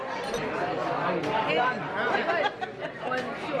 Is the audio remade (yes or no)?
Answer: no